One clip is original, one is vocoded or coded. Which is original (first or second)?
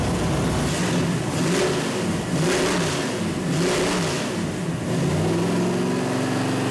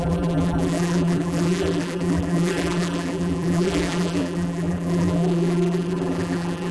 first